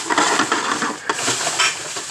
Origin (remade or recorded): recorded